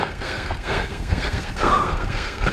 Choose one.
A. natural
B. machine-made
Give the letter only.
B